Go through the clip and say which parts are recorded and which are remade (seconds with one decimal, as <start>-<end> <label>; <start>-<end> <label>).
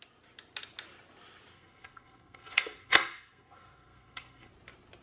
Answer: 0.0-1.5 recorded; 1.5-4.5 remade; 4.5-5.0 recorded